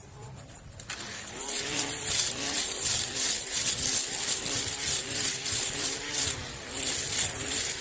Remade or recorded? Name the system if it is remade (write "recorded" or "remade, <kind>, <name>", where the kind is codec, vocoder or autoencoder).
recorded